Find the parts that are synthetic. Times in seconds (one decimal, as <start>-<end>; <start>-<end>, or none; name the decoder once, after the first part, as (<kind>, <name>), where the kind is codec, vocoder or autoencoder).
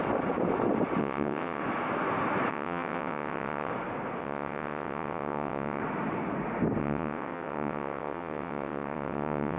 1.0-1.6 (vocoder, WaveNeXt); 2.5-3.7; 4.2-5.8; 6.8-9.6